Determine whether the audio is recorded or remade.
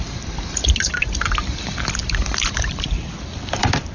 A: remade